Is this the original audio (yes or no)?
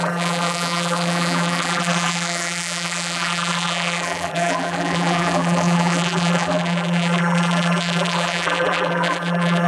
no